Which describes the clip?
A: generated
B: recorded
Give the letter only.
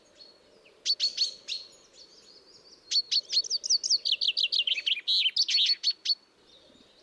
B